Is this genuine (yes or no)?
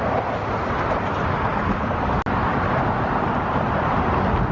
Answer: yes